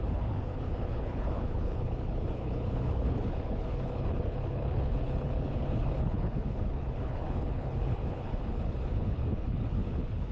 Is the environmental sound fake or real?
fake